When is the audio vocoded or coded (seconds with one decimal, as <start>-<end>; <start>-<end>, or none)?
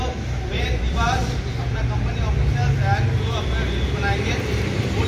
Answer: 0.0-1.2; 4.3-5.1